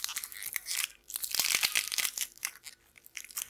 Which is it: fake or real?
fake